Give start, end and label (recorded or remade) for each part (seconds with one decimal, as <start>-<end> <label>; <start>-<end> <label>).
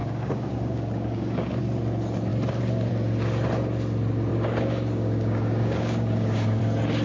0.0-1.6 remade; 1.6-4.3 recorded; 4.3-6.6 remade; 6.6-7.0 recorded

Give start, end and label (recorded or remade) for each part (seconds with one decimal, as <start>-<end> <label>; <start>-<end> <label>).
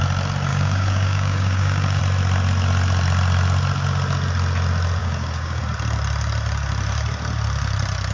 0.0-0.5 recorded; 0.5-2.0 remade; 2.0-5.0 recorded; 5.0-5.6 remade; 5.6-8.1 recorded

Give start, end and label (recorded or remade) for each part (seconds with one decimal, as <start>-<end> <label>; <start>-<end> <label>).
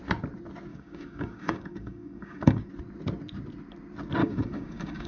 0.0-0.7 recorded; 0.7-2.7 remade; 2.7-4.2 recorded; 4.2-5.1 remade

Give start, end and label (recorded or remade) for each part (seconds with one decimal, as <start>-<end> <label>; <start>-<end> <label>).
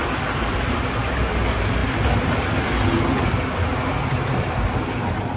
0.0-5.4 recorded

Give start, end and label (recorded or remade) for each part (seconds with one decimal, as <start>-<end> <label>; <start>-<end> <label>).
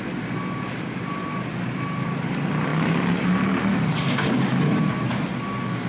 0.0-5.9 recorded